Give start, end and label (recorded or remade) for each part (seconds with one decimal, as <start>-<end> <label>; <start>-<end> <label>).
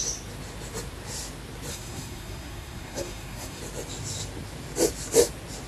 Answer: 0.0-1.7 recorded; 1.7-3.6 remade; 3.6-5.7 recorded